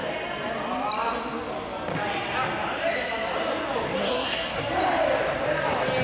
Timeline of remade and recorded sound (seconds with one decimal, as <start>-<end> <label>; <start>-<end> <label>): 0.0-4.0 recorded; 4.0-4.6 remade; 4.6-6.0 recorded

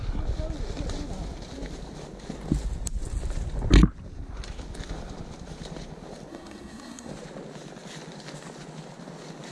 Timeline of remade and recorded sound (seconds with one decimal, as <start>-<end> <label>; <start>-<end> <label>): 0.0-6.3 recorded; 6.3-7.1 remade; 7.1-9.5 recorded

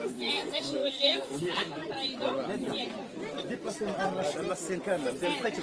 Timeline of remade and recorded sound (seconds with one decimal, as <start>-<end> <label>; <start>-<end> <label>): 0.0-1.8 remade; 1.8-5.6 recorded

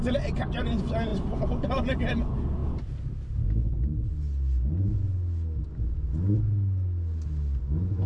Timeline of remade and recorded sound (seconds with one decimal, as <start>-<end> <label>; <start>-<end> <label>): 0.0-8.1 recorded

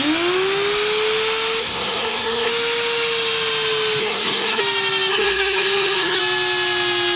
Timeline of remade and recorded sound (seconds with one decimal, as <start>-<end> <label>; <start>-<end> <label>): 0.0-1.6 recorded; 1.6-2.5 remade; 2.5-4.0 recorded; 4.0-4.6 remade; 4.6-5.1 recorded; 5.1-6.2 remade; 6.2-7.2 recorded

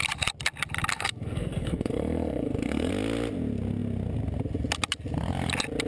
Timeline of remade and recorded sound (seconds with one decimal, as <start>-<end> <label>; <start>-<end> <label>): 0.0-0.9 recorded; 0.9-2.9 remade; 2.9-5.9 recorded

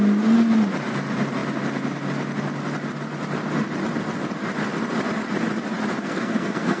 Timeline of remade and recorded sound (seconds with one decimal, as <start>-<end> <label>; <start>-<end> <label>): 0.0-6.0 recorded; 6.0-6.8 remade

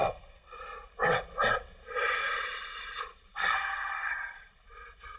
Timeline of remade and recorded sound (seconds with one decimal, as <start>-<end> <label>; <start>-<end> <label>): 0.0-0.6 remade; 0.6-3.3 recorded; 3.3-4.1 remade; 4.1-5.2 recorded